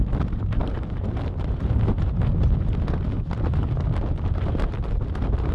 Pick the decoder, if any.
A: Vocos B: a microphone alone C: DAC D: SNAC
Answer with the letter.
B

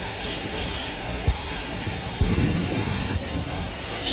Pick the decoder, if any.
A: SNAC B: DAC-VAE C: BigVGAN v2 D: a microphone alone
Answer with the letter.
A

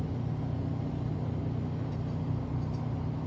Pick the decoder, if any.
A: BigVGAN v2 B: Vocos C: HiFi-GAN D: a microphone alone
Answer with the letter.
D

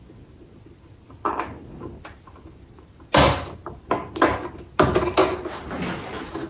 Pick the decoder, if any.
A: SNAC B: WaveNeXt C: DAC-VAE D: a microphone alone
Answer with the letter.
D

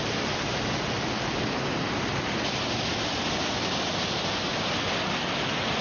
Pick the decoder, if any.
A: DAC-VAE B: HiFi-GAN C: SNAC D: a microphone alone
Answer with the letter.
D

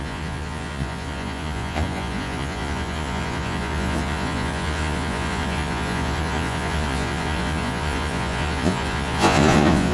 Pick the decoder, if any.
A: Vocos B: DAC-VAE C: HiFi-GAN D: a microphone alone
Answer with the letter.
A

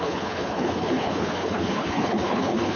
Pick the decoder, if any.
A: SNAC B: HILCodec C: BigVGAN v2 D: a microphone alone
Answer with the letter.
B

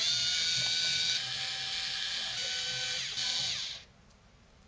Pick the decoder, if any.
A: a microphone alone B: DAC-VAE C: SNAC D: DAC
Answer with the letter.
A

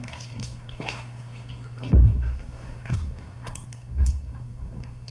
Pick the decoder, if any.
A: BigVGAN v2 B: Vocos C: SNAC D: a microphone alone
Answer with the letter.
C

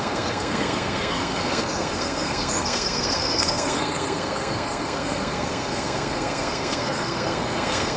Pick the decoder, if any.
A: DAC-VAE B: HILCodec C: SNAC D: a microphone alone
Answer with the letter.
C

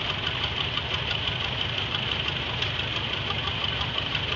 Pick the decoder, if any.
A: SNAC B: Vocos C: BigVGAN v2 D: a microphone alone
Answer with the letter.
D